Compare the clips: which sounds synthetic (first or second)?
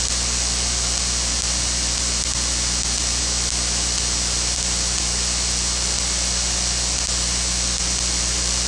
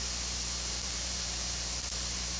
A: second